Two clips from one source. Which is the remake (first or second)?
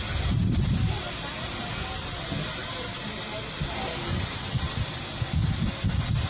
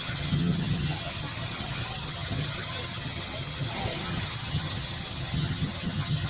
second